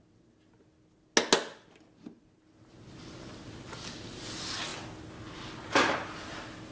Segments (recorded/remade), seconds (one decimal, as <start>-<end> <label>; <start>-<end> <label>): 0.0-6.7 recorded